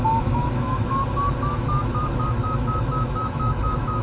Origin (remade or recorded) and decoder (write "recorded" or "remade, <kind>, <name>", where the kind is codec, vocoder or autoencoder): remade, autoencoder, DAC-VAE